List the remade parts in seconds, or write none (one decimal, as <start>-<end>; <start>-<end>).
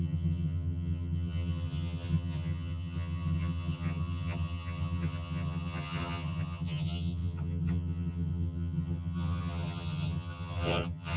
0.0-11.2